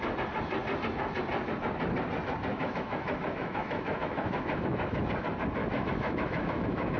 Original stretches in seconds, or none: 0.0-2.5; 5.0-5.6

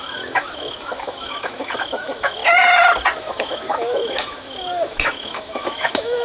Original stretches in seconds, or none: 2.4-3.2